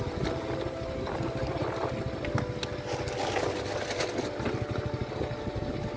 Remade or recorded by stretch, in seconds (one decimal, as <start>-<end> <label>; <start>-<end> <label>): 0.0-6.0 recorded